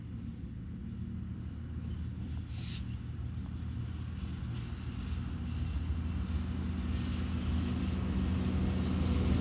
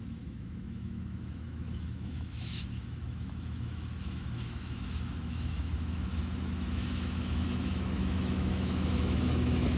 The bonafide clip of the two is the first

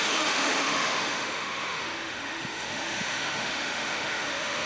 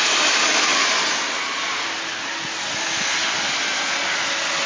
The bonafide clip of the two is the second